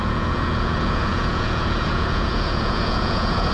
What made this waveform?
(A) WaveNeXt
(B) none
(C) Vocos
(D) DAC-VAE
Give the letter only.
C